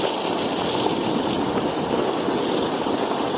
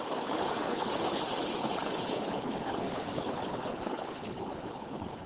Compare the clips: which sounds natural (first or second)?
first